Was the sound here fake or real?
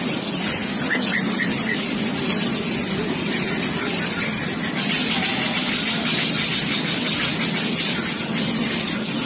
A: real